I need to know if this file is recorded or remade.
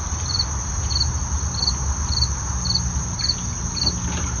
recorded